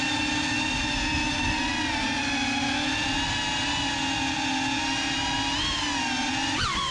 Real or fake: real